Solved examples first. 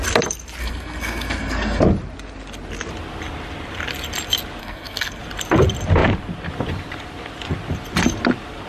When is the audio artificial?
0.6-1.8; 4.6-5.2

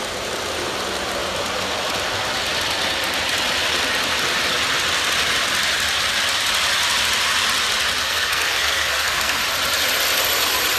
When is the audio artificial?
8.0-9.4